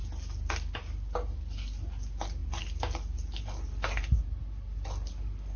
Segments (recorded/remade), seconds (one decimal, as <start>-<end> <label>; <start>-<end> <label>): 0.0-5.6 recorded